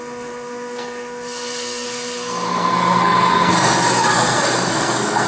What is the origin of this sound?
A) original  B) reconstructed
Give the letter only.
B